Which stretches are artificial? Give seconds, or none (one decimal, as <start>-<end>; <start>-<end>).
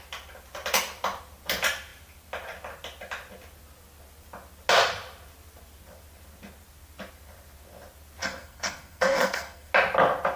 8.2-9.7